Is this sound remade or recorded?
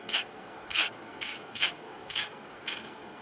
remade